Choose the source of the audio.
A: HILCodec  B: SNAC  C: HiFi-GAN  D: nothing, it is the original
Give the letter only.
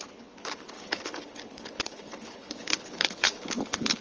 A